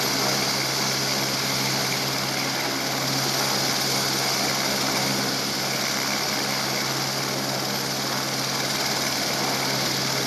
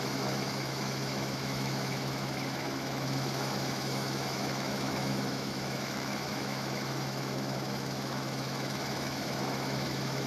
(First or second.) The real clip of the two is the first